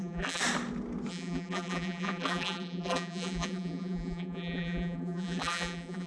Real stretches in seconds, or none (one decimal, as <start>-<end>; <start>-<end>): 0.4-1.1